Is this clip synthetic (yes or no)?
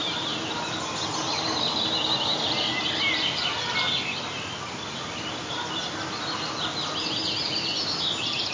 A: no